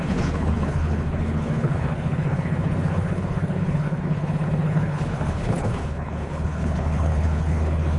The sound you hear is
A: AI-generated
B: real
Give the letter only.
A